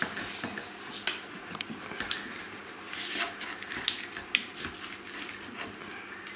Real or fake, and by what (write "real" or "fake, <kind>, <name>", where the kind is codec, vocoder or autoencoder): real